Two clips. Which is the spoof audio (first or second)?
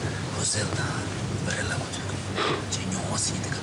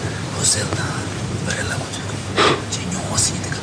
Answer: second